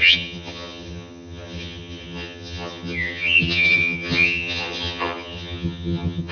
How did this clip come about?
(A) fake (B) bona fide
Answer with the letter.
A